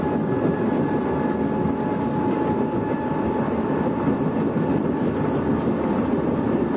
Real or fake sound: real